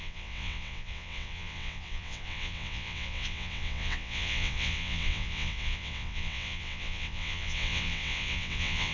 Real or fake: fake